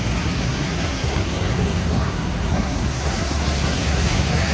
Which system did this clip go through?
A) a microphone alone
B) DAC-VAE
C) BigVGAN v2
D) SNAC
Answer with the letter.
D